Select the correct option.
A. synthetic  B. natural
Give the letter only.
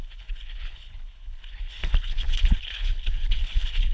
A